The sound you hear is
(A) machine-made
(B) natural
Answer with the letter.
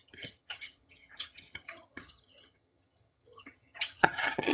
A